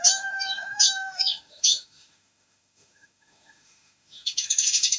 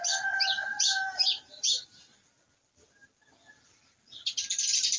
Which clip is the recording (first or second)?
second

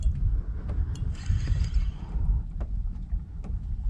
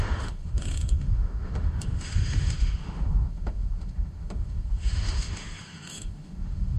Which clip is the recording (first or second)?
first